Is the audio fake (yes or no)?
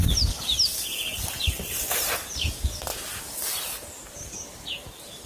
no